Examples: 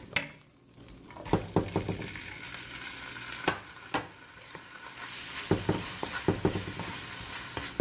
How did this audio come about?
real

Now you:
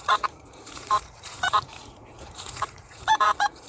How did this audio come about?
fake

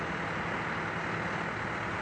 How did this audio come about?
real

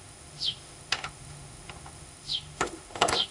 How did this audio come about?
fake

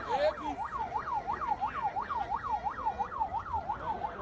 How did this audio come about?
real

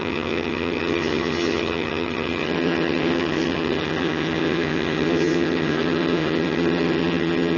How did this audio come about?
fake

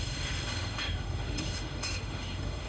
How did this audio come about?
fake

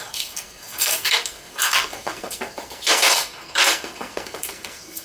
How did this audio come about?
fake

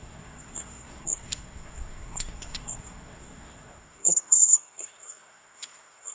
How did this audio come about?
fake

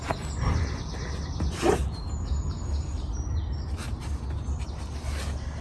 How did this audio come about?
real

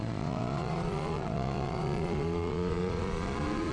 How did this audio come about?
fake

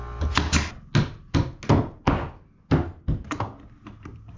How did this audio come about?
real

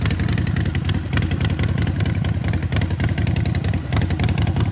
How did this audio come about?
real